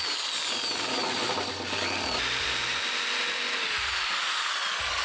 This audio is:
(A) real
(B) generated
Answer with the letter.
A